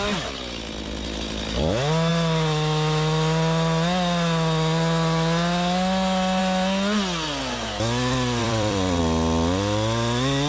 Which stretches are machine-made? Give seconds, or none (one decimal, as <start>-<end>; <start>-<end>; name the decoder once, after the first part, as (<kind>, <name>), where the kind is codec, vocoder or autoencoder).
8.4-9.0 (vocoder, BigVGAN v2)